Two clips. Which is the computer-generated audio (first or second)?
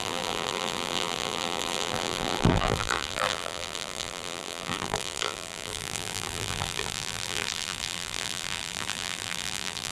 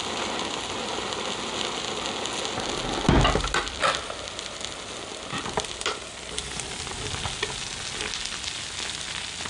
first